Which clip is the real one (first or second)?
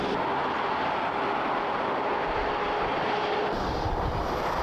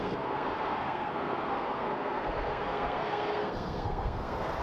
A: first